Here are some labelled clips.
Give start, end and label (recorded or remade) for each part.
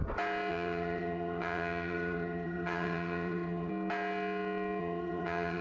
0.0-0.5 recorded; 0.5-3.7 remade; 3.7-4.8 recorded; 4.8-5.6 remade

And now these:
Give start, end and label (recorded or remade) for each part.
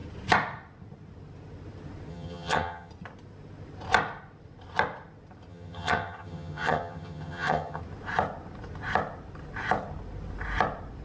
0.0-2.1 recorded; 2.1-2.9 remade; 2.9-5.5 recorded; 5.5-7.8 remade; 7.8-11.0 recorded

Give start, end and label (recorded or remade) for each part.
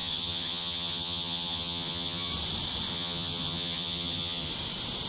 0.0-2.3 remade; 2.3-2.9 recorded; 2.9-4.5 remade; 4.5-5.1 recorded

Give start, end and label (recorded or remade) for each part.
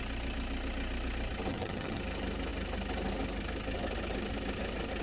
0.0-1.5 recorded; 1.5-2.0 remade; 2.0-5.0 recorded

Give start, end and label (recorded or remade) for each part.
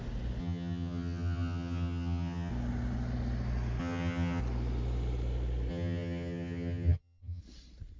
0.0-0.4 recorded; 0.4-2.5 remade; 2.5-3.8 recorded; 3.8-4.4 remade; 4.4-5.7 recorded; 5.7-7.4 remade; 7.4-8.0 recorded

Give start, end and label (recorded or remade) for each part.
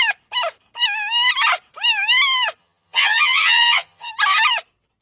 0.0-2.6 recorded; 2.6-4.1 remade; 4.1-5.0 recorded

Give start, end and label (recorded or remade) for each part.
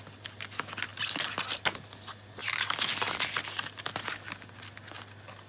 0.0-5.5 recorded